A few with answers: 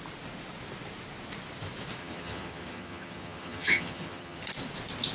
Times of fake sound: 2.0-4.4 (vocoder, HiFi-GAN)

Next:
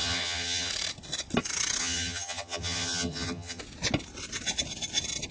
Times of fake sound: 0.0-0.7 (vocoder, HiFi-GAN); 1.8-3.6

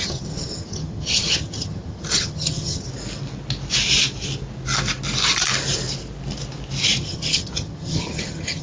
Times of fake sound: 0.0-2.9 (vocoder, HiFi-GAN); 7.0-8.6